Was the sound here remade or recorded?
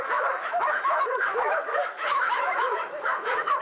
remade